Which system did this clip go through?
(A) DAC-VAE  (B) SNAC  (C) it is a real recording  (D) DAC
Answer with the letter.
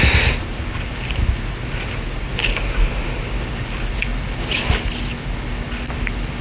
C